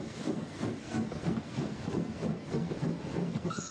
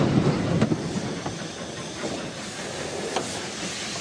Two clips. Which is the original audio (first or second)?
second